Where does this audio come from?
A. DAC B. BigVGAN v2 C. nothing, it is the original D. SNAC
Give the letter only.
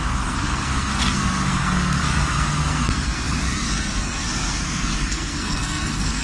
D